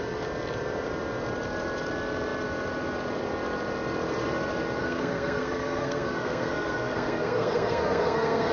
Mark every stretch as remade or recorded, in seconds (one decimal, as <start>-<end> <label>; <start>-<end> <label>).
0.0-4.8 recorded; 4.8-8.5 remade